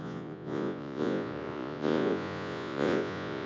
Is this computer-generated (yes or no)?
yes